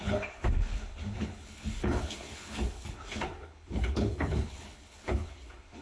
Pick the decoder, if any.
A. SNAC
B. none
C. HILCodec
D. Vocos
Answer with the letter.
C